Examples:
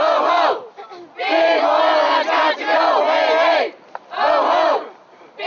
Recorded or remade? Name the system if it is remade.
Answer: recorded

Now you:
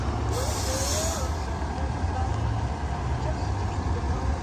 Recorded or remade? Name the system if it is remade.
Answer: recorded